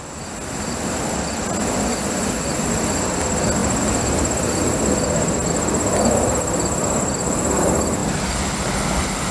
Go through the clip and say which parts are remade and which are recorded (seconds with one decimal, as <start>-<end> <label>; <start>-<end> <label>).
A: 0.0-9.3 recorded